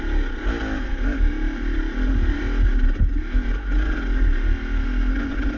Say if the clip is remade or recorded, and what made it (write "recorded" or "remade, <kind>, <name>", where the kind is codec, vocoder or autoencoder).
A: recorded